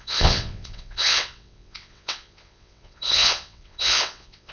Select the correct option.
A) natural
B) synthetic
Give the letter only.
B